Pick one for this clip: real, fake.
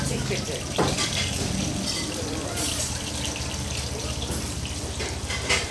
real